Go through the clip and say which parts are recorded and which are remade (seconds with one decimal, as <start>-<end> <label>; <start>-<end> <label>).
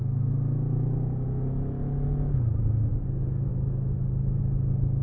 0.0-5.0 recorded